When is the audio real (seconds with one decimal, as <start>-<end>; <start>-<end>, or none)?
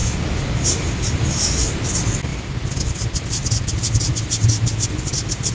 0.0-5.5